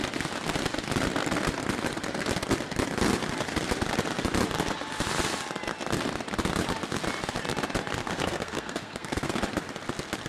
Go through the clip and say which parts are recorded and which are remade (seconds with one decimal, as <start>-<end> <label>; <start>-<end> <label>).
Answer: 0.0-8.0 recorded; 8.0-9.4 remade; 9.4-10.3 recorded

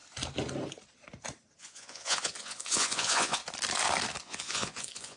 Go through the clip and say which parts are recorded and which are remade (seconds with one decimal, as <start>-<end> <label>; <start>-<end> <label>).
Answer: 0.0-1.6 recorded; 1.6-3.4 remade; 3.4-4.2 recorded; 4.2-5.2 remade

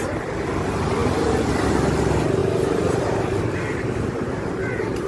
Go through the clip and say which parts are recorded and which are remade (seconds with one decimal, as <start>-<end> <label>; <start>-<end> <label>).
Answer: 0.0-1.0 recorded; 1.0-1.5 remade; 1.5-2.4 recorded; 2.4-4.5 remade; 4.5-5.1 recorded

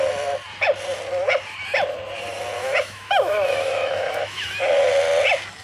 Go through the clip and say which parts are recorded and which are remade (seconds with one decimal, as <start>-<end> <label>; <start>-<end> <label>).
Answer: 0.0-2.6 recorded; 2.6-4.6 remade; 4.6-5.6 recorded

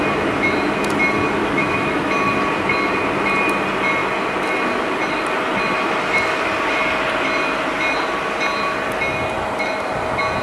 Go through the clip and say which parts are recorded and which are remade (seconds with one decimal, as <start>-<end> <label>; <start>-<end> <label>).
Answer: 0.0-1.4 recorded; 1.4-2.1 remade; 2.1-10.4 recorded

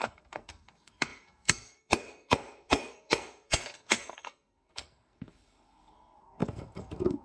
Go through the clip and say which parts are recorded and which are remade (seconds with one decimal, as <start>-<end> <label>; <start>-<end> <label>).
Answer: 0.0-7.2 remade

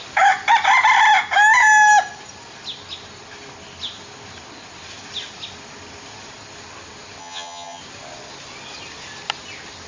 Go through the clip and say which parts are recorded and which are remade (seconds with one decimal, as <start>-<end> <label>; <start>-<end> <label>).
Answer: 0.0-7.2 recorded; 7.2-7.8 remade; 7.8-9.9 recorded

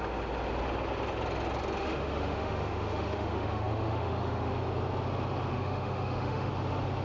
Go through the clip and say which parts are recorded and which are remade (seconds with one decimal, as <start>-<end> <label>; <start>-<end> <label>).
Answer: 0.0-1.8 recorded; 1.8-4.6 remade; 4.6-5.5 recorded; 5.5-6.5 remade; 6.5-7.0 recorded